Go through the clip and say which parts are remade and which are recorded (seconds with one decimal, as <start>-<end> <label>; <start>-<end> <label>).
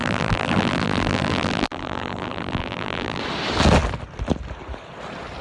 0.0-3.2 remade; 3.2-5.4 recorded